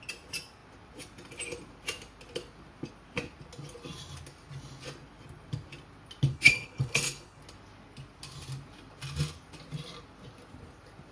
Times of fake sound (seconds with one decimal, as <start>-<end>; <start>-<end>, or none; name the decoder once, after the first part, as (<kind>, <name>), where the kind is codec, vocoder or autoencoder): 6.3-7.4 (codec, HILCodec)